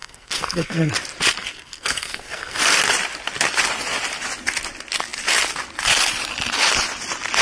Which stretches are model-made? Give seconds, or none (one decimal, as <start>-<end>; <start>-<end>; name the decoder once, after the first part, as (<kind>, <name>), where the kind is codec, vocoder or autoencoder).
0.0-0.9 (codec, SNAC); 1.5-2.6

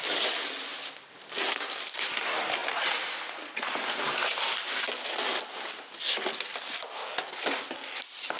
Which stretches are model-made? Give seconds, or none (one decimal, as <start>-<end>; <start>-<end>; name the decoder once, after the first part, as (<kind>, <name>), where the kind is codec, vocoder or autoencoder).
none

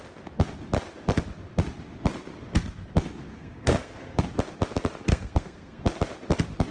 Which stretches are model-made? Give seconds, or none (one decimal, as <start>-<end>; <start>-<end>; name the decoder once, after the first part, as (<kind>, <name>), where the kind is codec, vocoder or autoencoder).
3.3-4.2 (codec, SNAC); 5.1-5.8

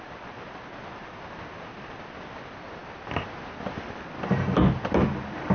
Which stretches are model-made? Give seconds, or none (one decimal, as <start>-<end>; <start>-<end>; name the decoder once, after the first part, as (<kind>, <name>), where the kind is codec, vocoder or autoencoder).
none